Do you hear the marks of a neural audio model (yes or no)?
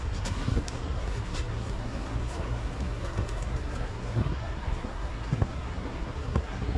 yes